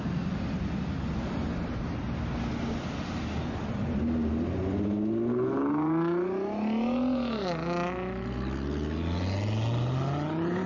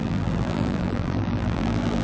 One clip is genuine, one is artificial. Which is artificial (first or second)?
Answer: second